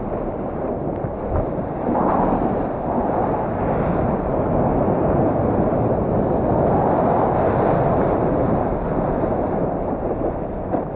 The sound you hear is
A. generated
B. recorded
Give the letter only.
B